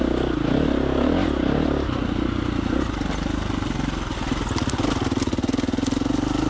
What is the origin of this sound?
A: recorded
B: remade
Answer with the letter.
A